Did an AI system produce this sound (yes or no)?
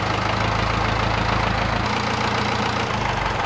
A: no